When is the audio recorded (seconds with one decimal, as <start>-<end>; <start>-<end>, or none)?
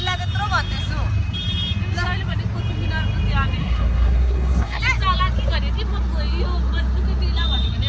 0.0-3.6; 4.8-7.9